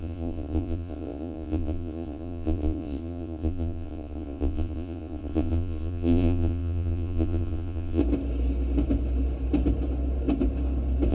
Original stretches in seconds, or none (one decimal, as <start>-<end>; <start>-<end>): 8.0-11.1